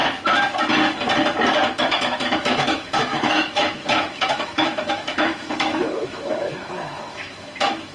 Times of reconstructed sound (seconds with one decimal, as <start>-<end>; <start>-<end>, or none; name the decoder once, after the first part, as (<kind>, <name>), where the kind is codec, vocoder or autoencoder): 1.8-7.9 (autoencoder, DAC-VAE)